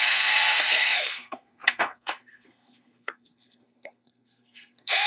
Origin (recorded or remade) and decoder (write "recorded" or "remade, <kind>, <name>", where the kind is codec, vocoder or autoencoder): remade, codec, SNAC